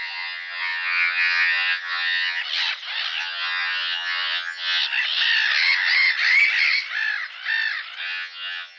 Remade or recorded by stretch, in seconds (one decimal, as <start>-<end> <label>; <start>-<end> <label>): 0.0-2.4 remade; 2.4-3.2 recorded; 3.2-4.8 remade; 4.8-8.0 recorded; 8.0-8.8 remade